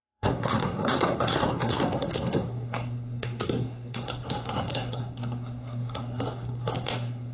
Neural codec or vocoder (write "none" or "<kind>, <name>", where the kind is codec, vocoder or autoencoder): codec, SNAC